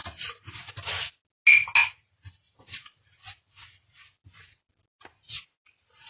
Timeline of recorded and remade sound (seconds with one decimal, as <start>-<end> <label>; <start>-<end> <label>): 0.0-6.1 recorded